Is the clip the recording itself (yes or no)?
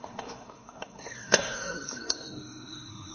no